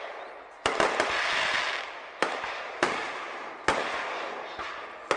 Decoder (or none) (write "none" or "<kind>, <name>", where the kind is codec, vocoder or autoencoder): none